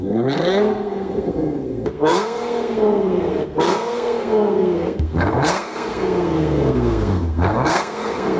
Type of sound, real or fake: fake